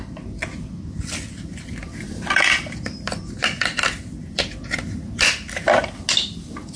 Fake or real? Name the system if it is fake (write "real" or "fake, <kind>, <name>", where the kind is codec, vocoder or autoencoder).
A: real